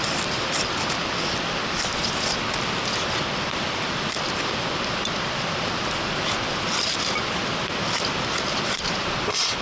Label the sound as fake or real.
fake